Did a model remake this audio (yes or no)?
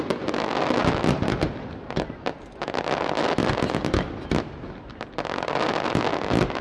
no